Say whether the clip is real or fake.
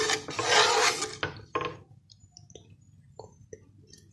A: real